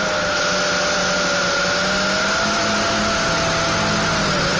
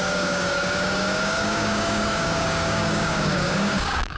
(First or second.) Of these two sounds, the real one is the first